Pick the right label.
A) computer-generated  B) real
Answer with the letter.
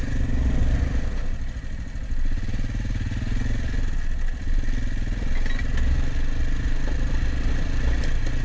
B